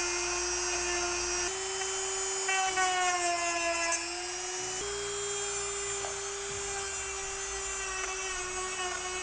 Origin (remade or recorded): recorded